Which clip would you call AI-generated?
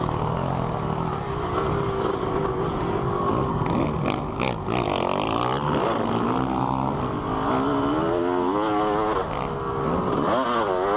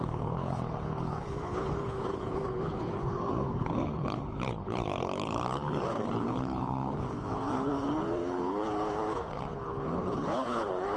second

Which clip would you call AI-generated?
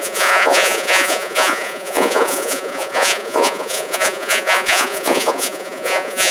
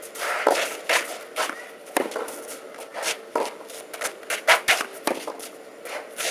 first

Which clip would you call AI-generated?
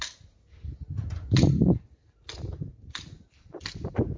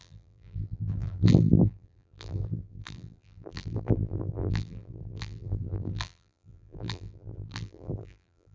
second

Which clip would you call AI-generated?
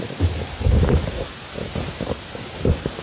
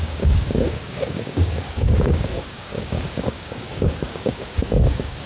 second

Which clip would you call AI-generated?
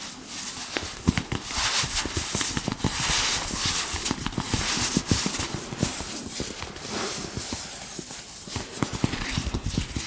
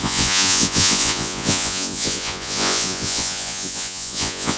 second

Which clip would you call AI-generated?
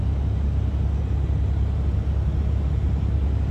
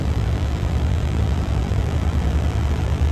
second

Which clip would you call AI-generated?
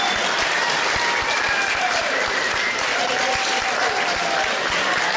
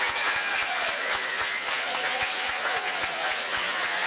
second